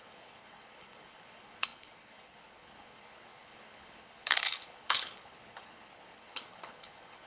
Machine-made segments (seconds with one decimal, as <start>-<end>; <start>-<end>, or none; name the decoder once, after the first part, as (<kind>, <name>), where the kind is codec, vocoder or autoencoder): 0.0-7.3 (codec, HILCodec)